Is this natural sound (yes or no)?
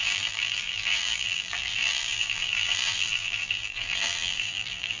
no